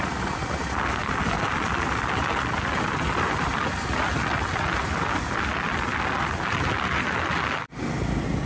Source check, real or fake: real